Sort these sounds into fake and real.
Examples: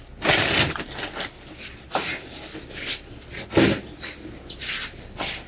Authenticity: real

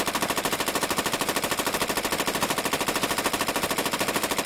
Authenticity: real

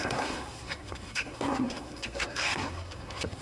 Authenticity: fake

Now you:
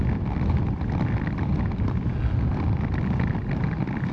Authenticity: real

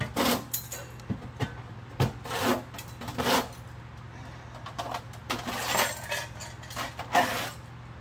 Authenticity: real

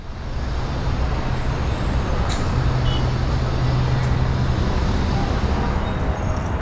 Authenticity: real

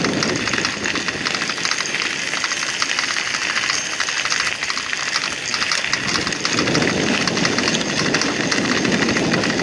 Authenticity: real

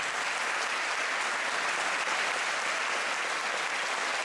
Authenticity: real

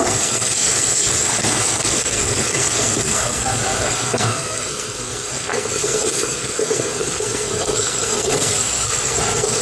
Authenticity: fake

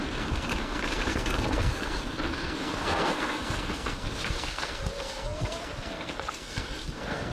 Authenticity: fake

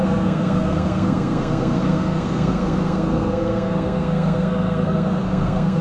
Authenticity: fake